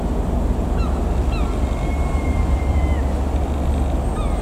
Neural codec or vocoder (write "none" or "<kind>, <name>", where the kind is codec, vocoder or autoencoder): none